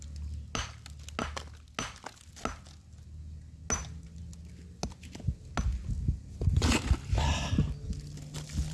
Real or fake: real